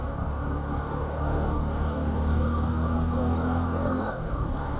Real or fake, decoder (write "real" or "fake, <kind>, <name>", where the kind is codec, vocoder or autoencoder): fake, codec, DAC